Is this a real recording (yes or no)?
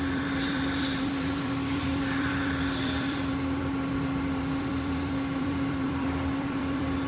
no